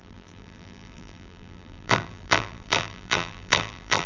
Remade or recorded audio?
remade